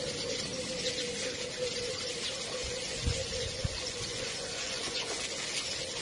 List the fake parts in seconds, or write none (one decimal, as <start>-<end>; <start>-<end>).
2.6-5.2